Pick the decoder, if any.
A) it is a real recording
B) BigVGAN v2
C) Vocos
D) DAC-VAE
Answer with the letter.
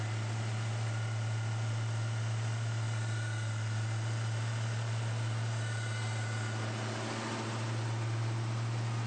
A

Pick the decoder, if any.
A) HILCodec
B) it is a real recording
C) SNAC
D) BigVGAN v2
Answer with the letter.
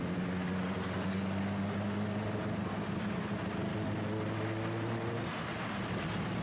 B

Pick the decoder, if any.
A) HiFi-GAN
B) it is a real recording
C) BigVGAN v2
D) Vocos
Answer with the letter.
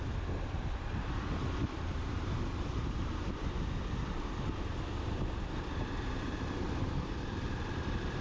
C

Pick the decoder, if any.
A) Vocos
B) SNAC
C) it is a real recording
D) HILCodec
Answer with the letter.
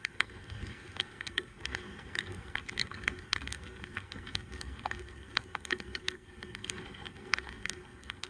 B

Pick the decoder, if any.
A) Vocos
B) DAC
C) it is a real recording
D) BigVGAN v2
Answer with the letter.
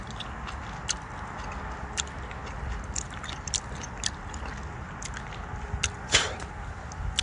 C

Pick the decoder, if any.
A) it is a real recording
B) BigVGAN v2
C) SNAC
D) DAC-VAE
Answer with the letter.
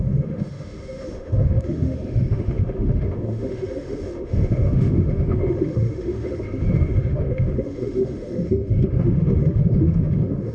D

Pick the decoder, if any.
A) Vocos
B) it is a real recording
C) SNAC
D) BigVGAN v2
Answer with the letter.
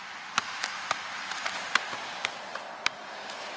B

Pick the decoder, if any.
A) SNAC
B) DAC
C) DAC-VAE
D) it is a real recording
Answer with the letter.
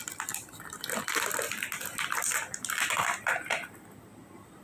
D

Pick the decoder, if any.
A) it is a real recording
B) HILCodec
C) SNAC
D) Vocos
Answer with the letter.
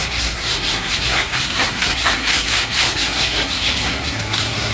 C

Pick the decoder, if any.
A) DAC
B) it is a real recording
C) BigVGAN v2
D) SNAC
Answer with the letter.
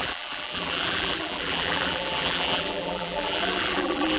C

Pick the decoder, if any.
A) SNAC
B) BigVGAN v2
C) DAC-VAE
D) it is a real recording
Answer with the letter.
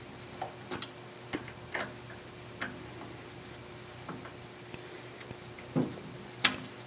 D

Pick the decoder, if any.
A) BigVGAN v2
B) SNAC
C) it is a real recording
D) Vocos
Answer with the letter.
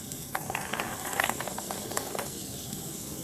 B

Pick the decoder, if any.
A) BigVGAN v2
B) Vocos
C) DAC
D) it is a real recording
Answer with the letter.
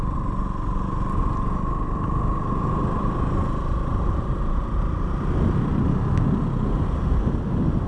D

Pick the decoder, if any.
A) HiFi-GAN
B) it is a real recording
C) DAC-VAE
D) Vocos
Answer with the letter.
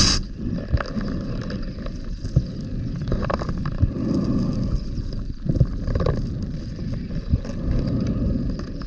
B